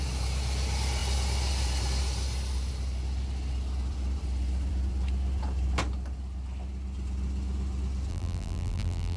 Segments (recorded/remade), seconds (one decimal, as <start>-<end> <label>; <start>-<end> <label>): 0.0-8.1 recorded; 8.1-9.2 remade